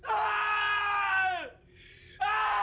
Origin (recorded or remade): recorded